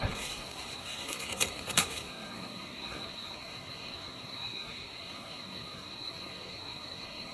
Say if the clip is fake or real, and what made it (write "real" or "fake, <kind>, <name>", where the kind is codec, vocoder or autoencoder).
fake, codec, SNAC